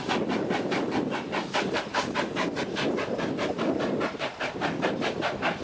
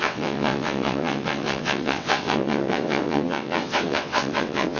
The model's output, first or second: second